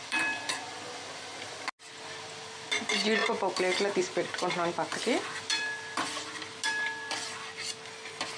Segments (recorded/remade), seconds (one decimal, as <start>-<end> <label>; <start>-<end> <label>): 0.0-8.4 recorded